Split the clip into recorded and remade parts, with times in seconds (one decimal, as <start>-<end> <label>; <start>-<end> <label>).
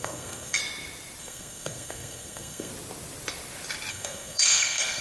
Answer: 0.0-0.6 remade; 0.6-1.2 recorded; 1.2-2.7 remade; 2.7-3.9 recorded; 3.9-5.0 remade